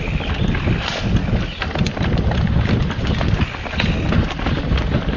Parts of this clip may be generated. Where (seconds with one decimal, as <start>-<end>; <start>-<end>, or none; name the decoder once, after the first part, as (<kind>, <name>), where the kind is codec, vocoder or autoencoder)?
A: none